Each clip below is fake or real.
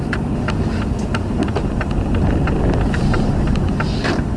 real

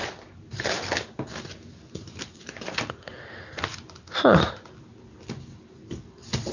real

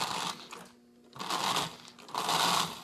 real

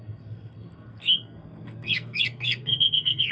fake